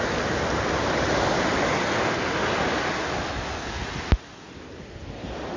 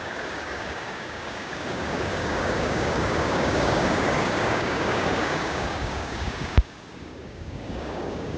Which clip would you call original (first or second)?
first